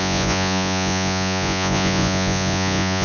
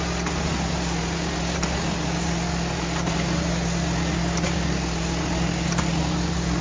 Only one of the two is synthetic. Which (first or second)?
first